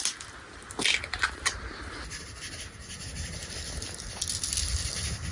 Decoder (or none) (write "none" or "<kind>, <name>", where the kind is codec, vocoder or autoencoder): none